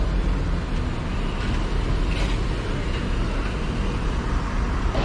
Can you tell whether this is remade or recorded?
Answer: recorded